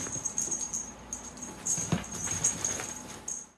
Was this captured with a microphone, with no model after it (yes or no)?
yes